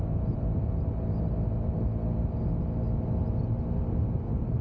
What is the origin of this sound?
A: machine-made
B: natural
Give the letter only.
B